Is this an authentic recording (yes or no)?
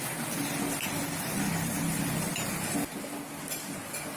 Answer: yes